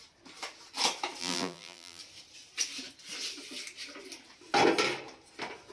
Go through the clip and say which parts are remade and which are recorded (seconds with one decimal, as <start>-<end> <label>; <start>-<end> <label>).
0.0-1.2 recorded; 1.2-2.0 remade; 2.0-5.7 recorded